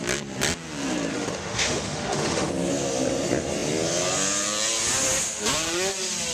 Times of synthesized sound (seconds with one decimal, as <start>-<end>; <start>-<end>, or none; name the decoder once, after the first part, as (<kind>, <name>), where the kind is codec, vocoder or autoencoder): 1.1-2.5 (autoencoder, DAC-VAE)